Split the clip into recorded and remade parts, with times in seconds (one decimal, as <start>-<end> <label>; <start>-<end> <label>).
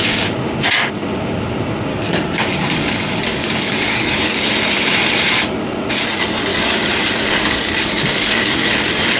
0.0-1.9 recorded; 1.9-4.4 remade; 4.4-6.5 recorded; 6.5-9.2 remade